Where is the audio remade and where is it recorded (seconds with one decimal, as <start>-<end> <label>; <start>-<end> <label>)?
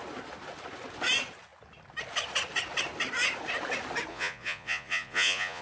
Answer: 0.0-4.1 recorded; 4.1-5.6 remade